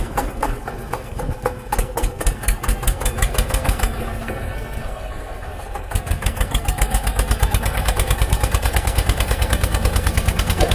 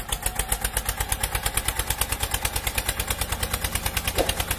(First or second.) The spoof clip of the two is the first